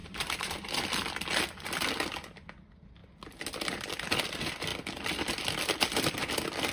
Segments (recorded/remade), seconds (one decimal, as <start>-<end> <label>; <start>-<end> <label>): 0.0-0.7 remade; 0.7-6.7 recorded

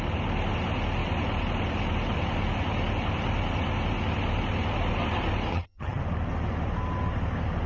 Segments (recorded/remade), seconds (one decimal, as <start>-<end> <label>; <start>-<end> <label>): 0.0-5.5 recorded; 5.5-6.0 remade; 6.0-7.7 recorded

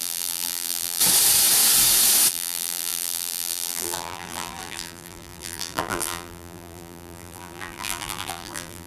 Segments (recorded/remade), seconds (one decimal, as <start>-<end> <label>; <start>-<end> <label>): 0.0-1.0 remade; 1.0-2.3 recorded; 2.3-8.9 remade